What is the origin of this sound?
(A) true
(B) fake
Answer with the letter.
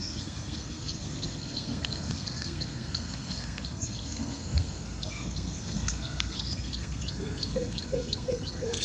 B